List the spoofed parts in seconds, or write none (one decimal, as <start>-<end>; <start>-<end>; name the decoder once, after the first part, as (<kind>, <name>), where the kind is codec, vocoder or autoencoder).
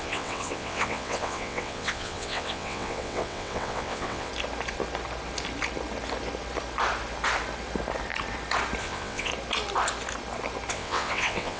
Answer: 0.0-4.3 (vocoder, WaveNeXt); 8.8-9.3; 10.7-11.6